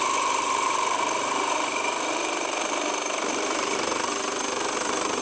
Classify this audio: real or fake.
fake